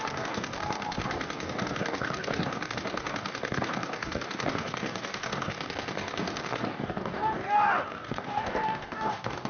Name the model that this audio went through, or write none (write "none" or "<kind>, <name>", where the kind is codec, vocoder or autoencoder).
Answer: codec, DAC